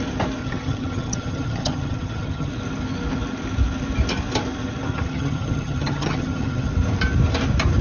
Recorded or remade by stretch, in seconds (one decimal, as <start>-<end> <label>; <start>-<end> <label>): 0.0-0.4 recorded; 0.4-2.5 remade; 2.5-4.9 recorded; 4.9-6.7 remade; 6.7-7.8 recorded